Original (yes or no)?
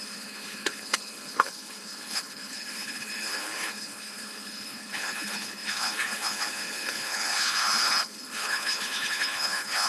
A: no